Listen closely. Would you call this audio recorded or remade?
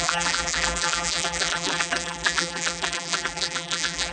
remade